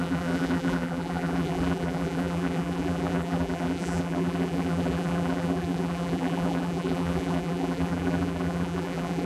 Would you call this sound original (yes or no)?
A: no